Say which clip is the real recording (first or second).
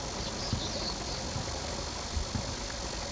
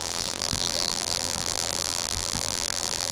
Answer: first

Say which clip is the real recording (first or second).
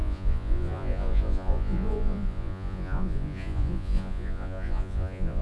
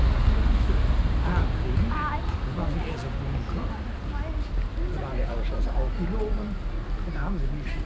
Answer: second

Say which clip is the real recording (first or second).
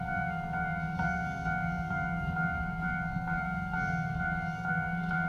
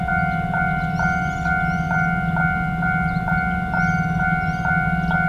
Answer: second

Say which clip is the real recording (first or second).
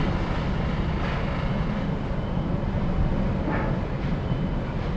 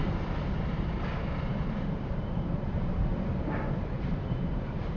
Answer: first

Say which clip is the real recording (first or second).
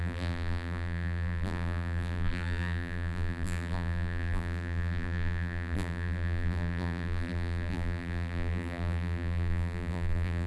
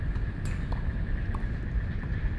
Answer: second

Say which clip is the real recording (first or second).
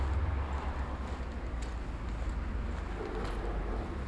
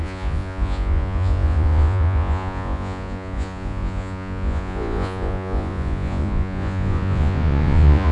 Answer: first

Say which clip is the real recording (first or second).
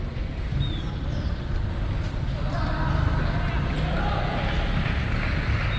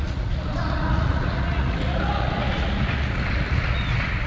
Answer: first